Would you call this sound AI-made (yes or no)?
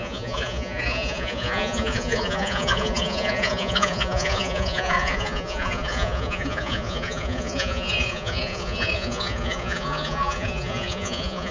yes